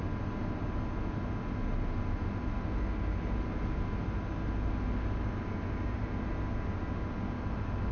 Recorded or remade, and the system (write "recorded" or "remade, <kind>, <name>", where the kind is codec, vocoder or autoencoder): recorded